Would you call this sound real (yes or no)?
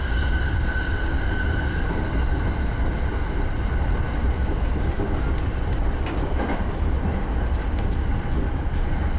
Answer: yes